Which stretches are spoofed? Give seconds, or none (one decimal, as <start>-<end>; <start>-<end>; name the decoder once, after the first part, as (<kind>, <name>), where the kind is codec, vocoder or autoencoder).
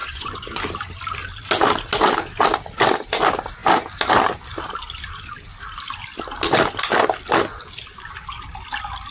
0.0-0.6 (vocoder, Vocos)